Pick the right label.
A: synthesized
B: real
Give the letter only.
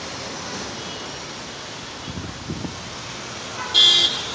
B